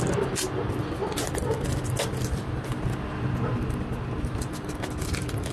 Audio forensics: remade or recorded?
recorded